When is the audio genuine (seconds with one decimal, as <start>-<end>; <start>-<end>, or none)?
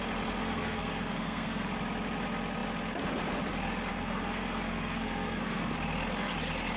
0.0-0.4; 1.7-3.9; 5.7-6.8